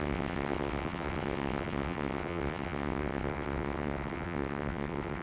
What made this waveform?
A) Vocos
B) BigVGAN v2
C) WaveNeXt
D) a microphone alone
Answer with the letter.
C